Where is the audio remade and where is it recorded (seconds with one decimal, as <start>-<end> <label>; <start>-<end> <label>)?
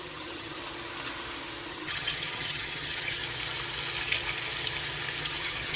0.0-0.6 remade; 0.6-1.7 recorded; 1.7-3.2 remade; 3.2-5.2 recorded; 5.2-5.8 remade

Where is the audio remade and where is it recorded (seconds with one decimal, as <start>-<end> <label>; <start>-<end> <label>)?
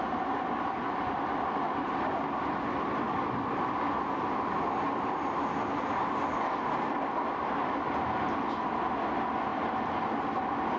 0.0-10.8 recorded